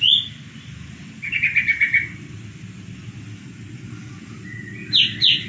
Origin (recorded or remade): recorded